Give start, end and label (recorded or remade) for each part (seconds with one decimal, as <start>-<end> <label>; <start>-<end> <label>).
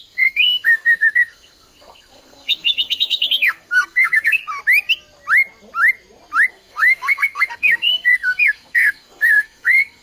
0.0-4.4 remade; 4.4-6.5 recorded; 6.5-10.0 remade